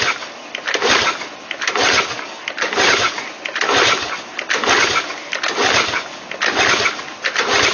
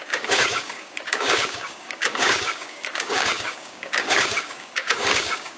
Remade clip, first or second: second